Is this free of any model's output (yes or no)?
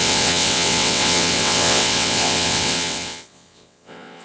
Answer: no